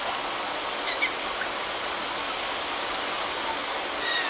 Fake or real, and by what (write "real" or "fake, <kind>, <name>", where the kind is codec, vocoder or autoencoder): real